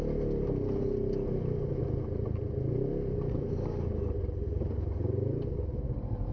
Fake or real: real